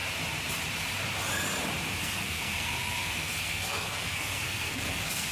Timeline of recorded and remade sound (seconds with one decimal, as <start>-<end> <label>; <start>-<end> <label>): 0.0-2.0 recorded; 2.0-5.3 remade